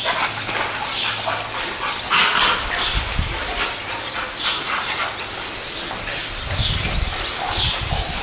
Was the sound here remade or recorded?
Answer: recorded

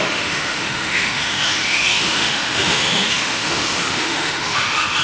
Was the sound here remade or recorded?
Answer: remade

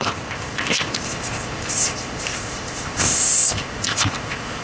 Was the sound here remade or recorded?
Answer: remade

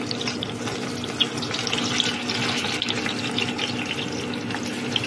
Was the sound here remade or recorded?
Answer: recorded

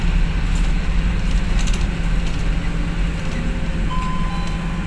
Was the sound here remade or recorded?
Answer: recorded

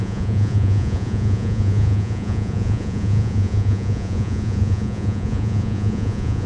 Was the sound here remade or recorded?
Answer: remade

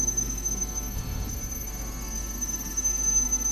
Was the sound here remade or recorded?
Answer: remade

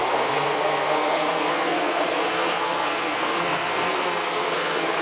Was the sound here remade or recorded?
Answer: remade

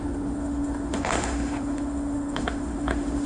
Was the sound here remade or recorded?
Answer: remade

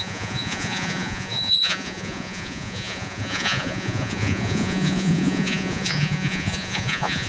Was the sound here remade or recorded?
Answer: remade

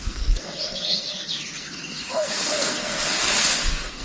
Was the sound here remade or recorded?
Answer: remade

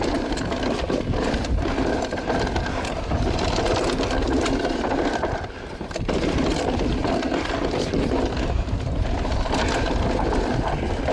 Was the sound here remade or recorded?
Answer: recorded